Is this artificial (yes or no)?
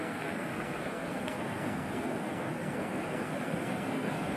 yes